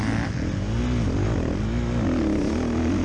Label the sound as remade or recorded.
recorded